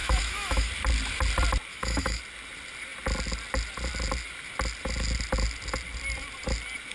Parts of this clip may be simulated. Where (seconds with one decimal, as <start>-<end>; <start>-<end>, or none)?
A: 0.0-0.7; 1.7-2.2